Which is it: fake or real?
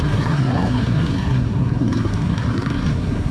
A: fake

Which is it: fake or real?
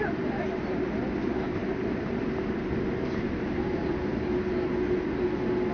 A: real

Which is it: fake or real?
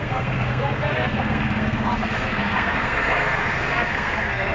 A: fake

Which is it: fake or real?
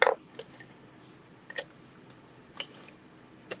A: real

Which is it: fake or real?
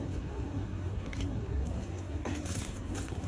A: fake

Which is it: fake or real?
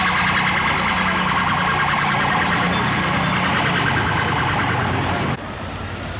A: real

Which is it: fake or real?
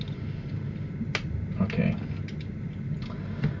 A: real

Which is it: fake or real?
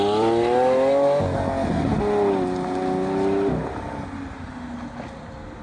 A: real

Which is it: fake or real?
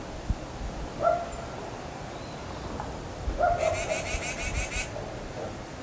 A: real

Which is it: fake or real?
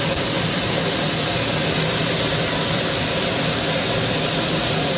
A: real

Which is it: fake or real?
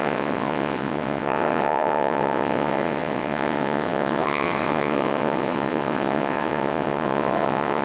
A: fake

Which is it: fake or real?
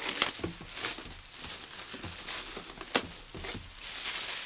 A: real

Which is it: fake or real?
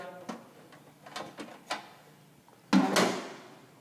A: real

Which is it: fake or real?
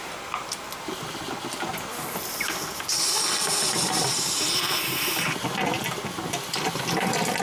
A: real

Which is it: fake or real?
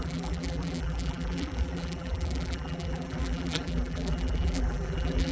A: fake